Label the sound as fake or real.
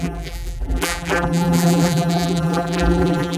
fake